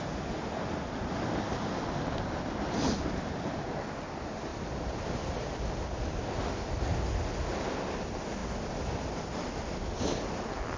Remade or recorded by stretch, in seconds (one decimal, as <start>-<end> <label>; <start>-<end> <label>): 0.0-10.8 recorded